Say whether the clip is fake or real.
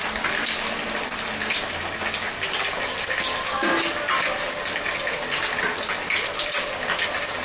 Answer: real